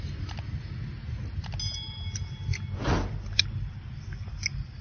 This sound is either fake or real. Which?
real